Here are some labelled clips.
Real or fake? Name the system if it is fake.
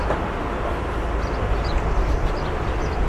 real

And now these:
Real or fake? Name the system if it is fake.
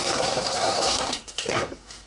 fake, codec, SNAC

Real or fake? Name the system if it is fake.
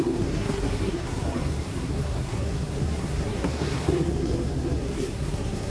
fake, codec, SNAC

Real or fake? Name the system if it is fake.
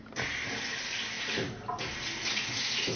real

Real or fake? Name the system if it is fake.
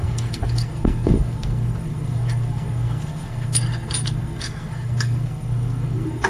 fake, codec, SNAC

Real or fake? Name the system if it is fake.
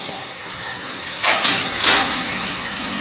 fake, codec, SNAC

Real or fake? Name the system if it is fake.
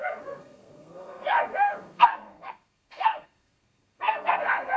fake, codec, SNAC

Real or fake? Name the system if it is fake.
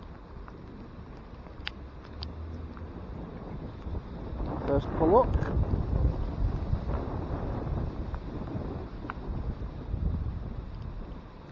real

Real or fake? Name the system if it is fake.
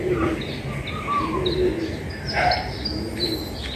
real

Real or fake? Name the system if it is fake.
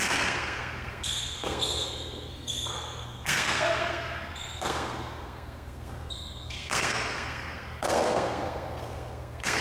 fake, codec, SNAC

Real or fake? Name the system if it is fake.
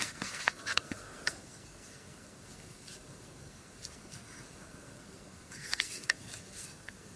fake, codec, SNAC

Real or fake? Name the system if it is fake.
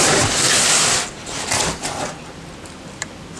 real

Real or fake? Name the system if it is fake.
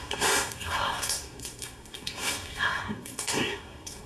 fake, codec, SNAC